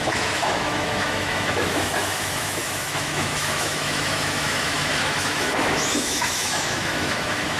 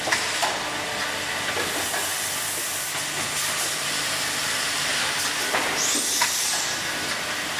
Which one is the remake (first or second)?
first